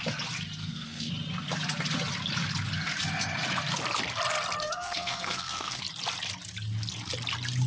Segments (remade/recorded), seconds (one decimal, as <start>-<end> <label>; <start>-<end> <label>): 0.0-0.6 recorded; 0.6-1.1 remade; 1.1-4.6 recorded; 4.6-5.8 remade; 5.8-7.7 recorded